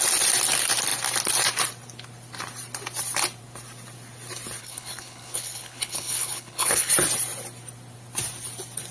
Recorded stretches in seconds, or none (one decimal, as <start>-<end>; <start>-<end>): 0.0-4.6; 6.9-8.9

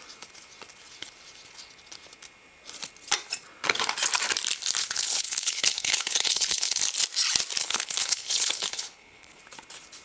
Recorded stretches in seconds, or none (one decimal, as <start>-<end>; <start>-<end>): 0.0-4.8; 6.8-7.6; 9.4-10.0

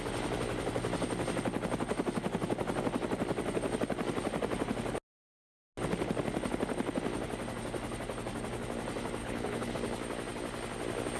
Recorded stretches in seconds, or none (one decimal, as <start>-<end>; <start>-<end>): 0.0-9.2; 9.7-11.2

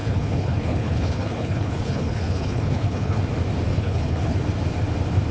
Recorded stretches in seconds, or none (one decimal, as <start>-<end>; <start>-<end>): 3.2-3.7; 4.4-5.3

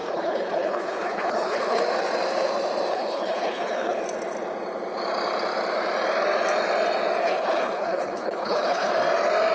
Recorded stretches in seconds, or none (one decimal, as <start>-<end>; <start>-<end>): 1.8-2.9; 4.0-7.2; 8.9-9.5

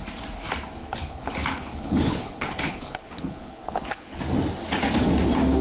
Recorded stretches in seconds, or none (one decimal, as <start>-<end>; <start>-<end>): 0.0-0.8; 4.2-5.6

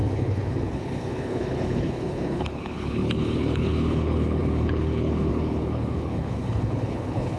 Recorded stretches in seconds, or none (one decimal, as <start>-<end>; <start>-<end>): none

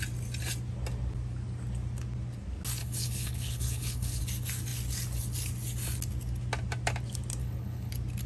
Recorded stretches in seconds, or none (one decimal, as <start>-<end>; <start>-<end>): 0.0-2.8; 4.2-7.4; 7.9-8.3